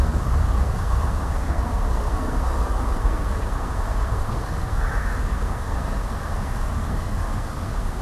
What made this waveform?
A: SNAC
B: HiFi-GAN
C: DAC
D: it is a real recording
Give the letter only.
A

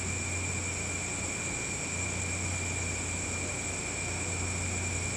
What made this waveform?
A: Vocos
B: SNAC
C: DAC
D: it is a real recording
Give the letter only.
D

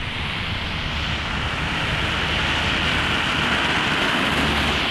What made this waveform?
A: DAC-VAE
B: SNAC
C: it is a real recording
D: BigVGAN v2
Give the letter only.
C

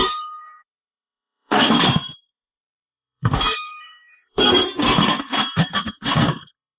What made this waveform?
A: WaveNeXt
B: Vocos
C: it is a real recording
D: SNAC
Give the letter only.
D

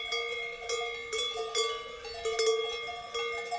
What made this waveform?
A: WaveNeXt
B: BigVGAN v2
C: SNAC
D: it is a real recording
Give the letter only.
D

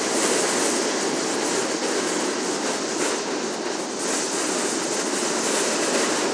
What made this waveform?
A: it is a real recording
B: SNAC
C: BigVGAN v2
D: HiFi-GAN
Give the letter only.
A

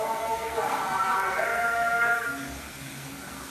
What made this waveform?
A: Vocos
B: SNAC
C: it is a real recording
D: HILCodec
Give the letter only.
B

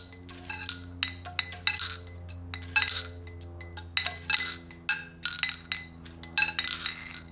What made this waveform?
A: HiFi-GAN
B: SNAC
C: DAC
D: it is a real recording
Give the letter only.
D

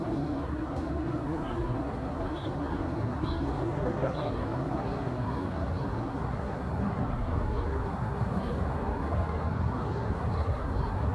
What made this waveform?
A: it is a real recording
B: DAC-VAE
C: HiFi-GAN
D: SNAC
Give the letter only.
D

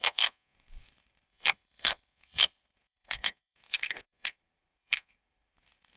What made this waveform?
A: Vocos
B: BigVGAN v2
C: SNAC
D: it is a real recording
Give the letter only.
C